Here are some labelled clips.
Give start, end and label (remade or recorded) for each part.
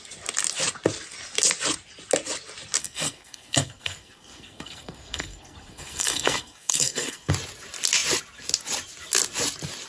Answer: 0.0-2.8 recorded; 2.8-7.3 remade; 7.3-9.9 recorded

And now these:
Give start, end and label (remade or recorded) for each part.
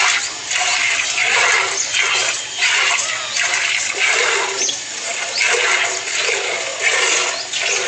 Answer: 0.0-7.9 recorded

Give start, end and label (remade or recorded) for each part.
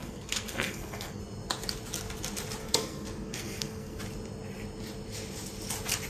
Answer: 0.0-1.2 remade; 1.2-2.6 recorded; 2.6-4.0 remade; 4.0-6.1 recorded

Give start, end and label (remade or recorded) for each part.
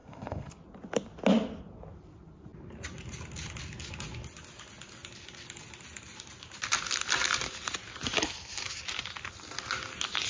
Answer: 0.0-0.5 remade; 0.5-10.3 recorded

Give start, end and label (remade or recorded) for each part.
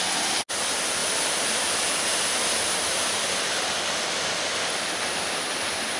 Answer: 0.0-6.0 recorded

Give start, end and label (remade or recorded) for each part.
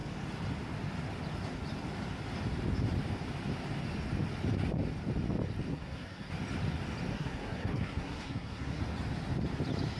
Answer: 0.0-5.7 recorded; 5.7-6.3 remade; 6.3-7.1 recorded; 7.1-8.8 remade; 8.8-10.0 recorded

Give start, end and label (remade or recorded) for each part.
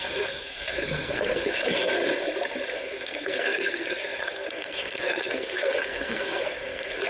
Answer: 0.0-2.0 remade; 2.0-2.7 recorded; 2.7-7.1 remade